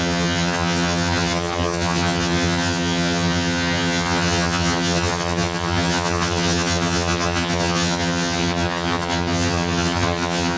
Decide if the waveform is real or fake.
fake